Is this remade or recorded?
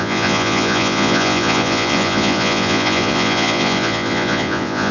remade